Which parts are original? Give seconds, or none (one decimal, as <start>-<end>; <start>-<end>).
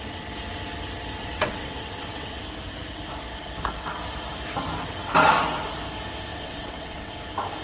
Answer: 0.0-1.2; 2.4-6.3; 7.1-7.6